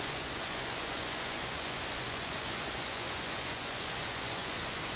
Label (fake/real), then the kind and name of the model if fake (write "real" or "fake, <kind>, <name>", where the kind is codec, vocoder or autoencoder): fake, vocoder, Vocos